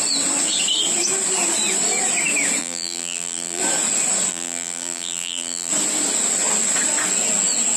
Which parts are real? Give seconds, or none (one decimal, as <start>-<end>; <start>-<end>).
0.0-2.6; 3.6-4.3; 5.7-7.8

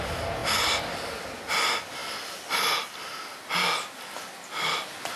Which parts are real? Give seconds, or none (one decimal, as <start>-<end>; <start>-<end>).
0.0-5.2